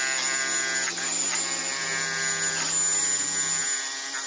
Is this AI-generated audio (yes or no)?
no